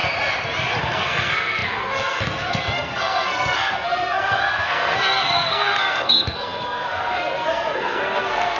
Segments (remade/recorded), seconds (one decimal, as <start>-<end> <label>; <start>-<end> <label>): 0.0-0.8 recorded; 0.8-8.6 remade